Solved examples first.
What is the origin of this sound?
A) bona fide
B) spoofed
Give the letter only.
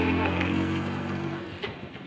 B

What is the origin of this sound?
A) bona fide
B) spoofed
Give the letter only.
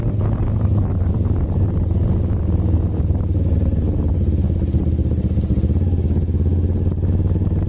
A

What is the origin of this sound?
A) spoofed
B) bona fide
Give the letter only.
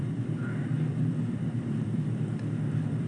A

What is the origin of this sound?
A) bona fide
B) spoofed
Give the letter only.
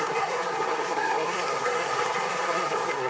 B